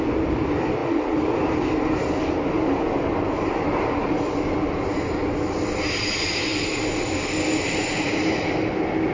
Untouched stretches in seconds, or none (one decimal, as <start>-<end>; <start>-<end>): 0.0-9.1